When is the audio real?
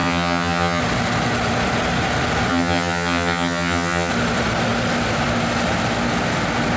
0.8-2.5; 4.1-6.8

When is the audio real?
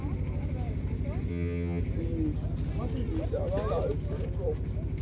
0.0-1.3; 1.8-5.0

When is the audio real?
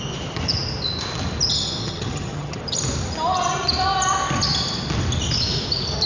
0.0-1.8; 2.6-6.1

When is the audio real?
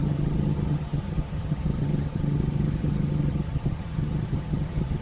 none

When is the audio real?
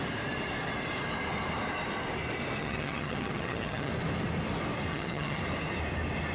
0.0-2.6; 3.9-4.9; 5.4-6.3